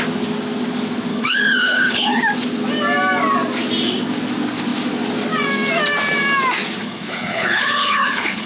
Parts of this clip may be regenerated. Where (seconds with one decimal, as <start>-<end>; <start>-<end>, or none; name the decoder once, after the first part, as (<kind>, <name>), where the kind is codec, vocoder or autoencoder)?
1.1-2.2 (codec, HILCodec); 6.8-8.5